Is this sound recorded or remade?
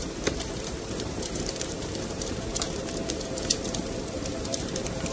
remade